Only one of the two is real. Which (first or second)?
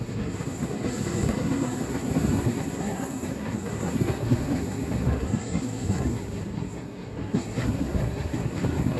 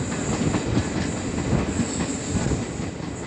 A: second